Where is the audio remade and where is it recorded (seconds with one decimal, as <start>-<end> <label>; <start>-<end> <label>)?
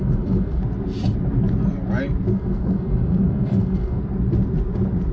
0.0-0.6 remade; 0.6-2.3 recorded; 2.3-4.0 remade; 4.0-5.1 recorded